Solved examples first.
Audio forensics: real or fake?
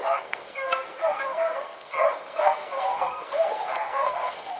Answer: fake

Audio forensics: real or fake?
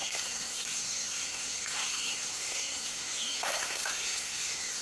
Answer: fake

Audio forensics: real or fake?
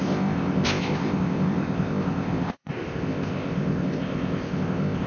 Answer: fake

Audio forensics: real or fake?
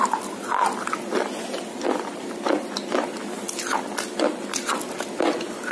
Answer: real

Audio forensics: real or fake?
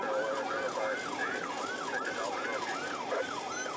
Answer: real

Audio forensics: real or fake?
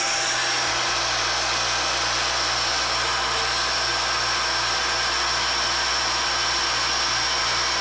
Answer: real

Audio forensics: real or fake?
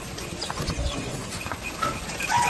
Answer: fake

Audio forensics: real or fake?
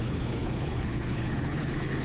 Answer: fake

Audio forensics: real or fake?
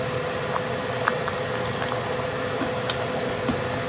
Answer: real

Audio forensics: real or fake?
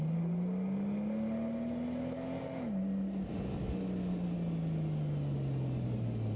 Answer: real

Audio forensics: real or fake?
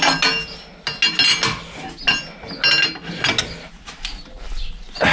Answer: real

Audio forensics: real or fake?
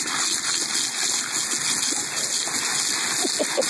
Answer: real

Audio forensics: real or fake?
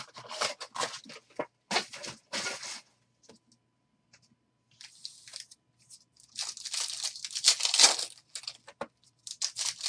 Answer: real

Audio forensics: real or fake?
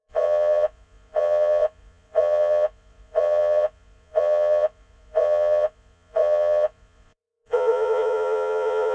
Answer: fake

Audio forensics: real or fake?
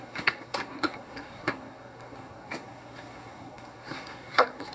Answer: fake